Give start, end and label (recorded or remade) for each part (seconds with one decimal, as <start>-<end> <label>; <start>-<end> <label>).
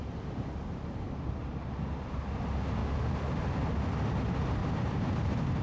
0.0-1.6 remade; 1.6-2.8 recorded; 2.8-3.4 remade; 3.4-4.6 recorded; 4.6-5.6 remade